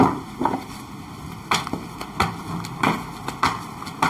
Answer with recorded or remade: recorded